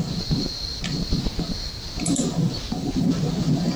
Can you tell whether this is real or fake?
real